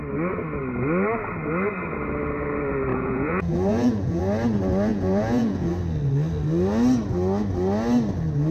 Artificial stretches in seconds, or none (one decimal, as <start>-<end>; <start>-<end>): 2.9-4.2; 4.9-5.7